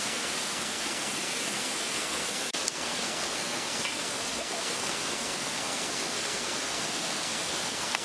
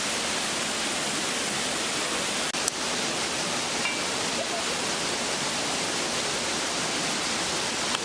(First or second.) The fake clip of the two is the first